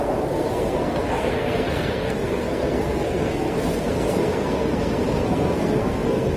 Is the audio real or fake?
fake